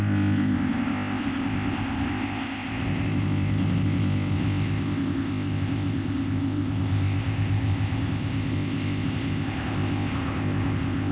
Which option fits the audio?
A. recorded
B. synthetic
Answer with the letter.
B